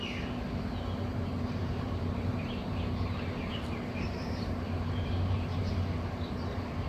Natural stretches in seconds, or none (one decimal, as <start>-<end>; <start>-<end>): 0.0-1.6; 5.6-6.9